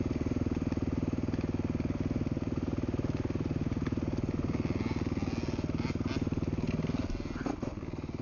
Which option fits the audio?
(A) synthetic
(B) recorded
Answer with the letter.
B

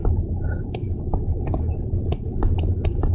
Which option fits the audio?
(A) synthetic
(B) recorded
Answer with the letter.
A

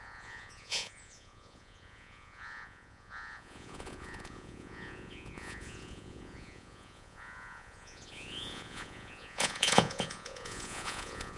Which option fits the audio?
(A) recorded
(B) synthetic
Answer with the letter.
B